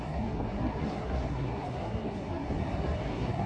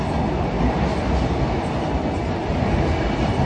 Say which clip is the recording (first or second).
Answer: second